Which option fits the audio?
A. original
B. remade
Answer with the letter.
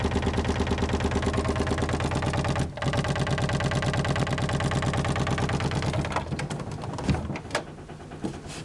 A